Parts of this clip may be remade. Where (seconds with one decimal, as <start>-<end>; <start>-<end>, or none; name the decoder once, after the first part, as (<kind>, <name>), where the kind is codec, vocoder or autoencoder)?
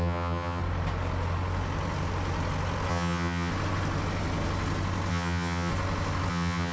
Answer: 0.0-0.6 (vocoder, HiFi-GAN); 2.9-3.5; 5.1-5.7; 6.3-6.7